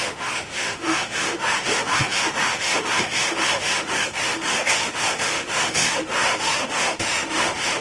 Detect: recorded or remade remade